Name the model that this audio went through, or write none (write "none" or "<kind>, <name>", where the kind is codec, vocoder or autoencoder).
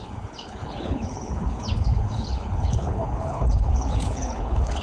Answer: codec, HILCodec